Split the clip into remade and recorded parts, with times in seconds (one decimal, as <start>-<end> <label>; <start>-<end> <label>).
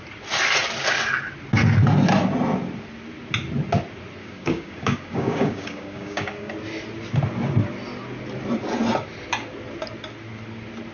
0.0-4.2 recorded; 4.2-6.5 remade; 6.5-10.9 recorded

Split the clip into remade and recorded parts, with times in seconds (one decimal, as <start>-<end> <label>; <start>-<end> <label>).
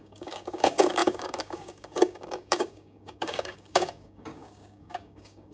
0.0-5.5 remade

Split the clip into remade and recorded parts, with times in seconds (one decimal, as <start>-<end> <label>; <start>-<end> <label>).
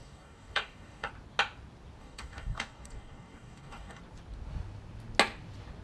0.0-1.1 remade; 1.1-2.0 recorded; 2.0-4.0 remade; 4.0-5.8 recorded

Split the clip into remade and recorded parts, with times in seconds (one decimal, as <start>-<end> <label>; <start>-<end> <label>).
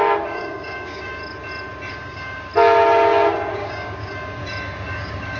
0.0-1.2 remade; 1.2-1.9 recorded; 1.9-2.5 remade; 2.5-3.5 recorded; 3.5-4.4 remade; 4.4-4.9 recorded; 4.9-5.4 remade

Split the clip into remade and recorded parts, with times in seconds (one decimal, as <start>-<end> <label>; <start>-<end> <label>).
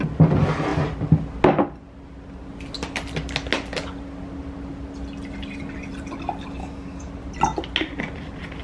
0.0-6.6 recorded; 6.6-7.1 remade; 7.1-8.6 recorded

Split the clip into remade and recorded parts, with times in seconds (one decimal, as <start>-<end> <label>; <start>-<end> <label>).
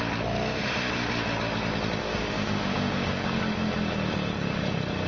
0.0-2.0 recorded; 2.0-3.4 remade; 3.4-5.1 recorded